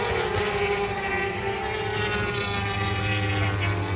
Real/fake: real